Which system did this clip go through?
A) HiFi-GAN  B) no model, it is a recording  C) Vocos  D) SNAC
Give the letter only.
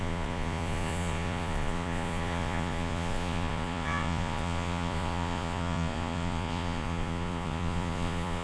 C